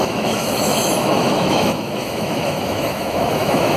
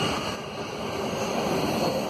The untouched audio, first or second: second